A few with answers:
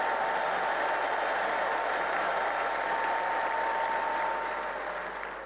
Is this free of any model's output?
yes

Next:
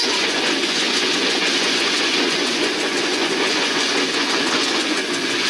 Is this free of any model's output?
no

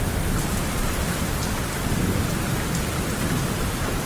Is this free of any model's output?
yes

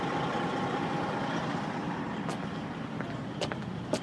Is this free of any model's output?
yes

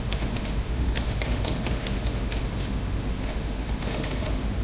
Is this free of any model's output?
no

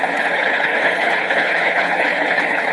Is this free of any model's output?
no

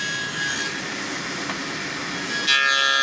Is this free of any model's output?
yes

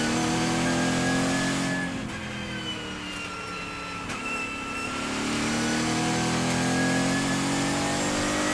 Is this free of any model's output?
yes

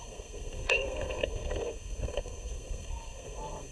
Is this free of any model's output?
no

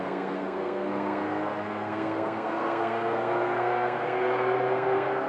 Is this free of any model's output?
no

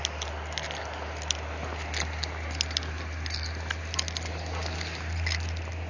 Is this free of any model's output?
yes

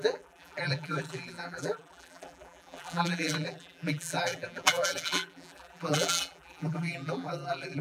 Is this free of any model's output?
no